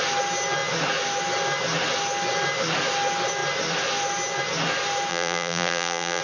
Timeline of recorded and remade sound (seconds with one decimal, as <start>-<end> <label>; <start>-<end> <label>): 0.0-5.1 recorded; 5.1-6.2 remade